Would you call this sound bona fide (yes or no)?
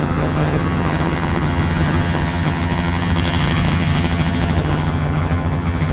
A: no